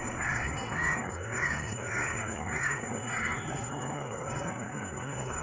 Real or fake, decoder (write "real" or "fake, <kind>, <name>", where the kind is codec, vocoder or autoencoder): fake, codec, SNAC